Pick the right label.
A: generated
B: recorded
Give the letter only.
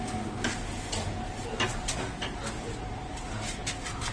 B